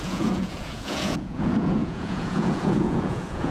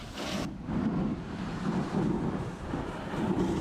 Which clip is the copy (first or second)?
first